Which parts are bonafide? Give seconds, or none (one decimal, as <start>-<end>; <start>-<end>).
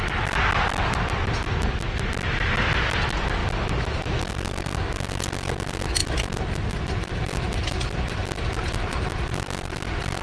0.0-10.2